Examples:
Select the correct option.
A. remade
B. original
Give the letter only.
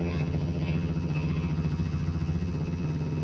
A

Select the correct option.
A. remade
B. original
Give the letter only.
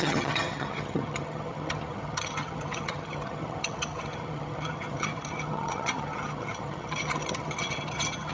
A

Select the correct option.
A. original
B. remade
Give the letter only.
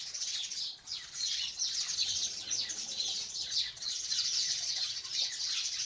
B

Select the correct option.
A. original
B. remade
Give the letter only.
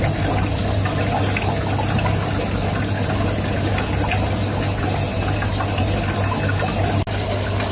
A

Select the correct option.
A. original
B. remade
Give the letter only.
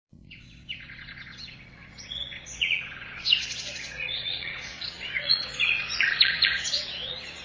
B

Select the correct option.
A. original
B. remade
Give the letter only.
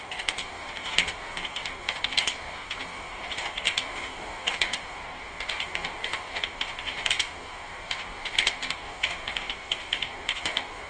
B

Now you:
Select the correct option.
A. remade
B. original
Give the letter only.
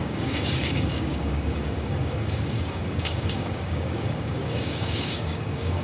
A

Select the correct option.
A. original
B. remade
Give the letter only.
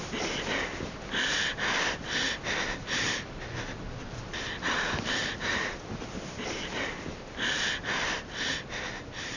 A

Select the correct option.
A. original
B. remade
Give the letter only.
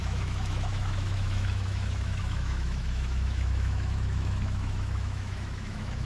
B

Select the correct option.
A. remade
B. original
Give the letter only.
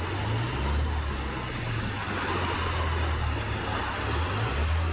B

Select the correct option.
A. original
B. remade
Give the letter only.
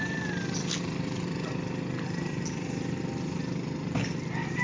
A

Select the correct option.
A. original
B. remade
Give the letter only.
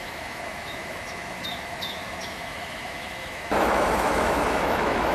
B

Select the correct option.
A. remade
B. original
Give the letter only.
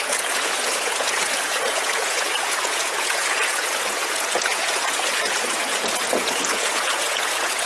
A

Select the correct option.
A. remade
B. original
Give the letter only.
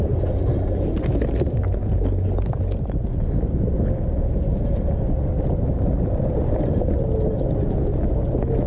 B